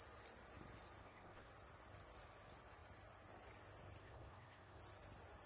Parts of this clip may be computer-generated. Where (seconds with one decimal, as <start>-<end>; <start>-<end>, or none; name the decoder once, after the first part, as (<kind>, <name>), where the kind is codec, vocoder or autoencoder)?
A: 1.0-1.5 (codec, SNAC); 4.0-4.8